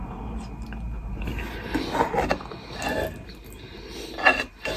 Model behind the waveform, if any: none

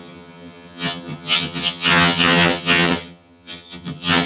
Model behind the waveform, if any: vocoder, HiFi-GAN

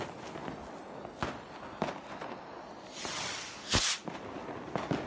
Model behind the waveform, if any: none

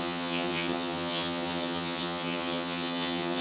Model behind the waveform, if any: vocoder, HiFi-GAN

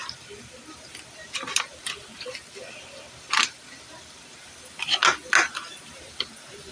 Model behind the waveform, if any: none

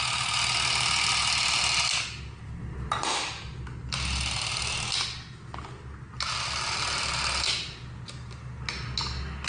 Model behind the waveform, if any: none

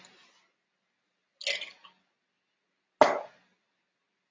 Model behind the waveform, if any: none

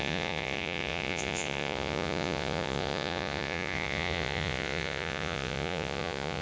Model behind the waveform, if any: vocoder, Vocos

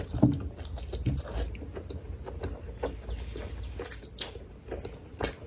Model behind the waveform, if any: none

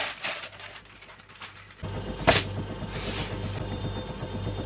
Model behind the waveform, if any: vocoder, BigVGAN v2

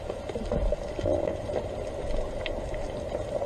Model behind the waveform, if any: none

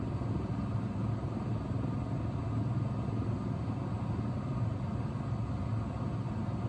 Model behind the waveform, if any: none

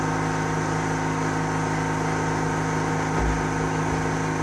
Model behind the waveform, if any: none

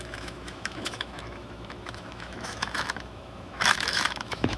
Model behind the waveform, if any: autoencoder, DAC-VAE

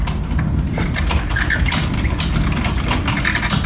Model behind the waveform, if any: none